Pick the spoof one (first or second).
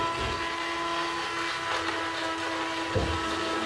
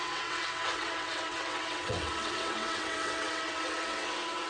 second